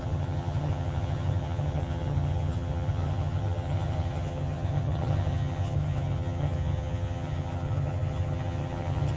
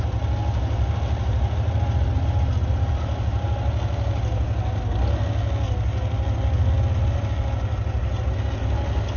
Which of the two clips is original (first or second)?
second